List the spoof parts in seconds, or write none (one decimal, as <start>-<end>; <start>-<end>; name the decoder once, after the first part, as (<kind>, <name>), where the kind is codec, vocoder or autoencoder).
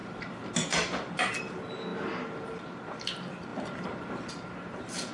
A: none